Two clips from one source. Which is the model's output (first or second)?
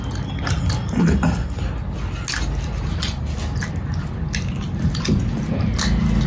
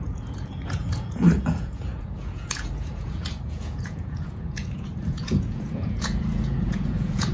second